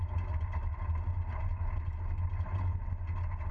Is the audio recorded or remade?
recorded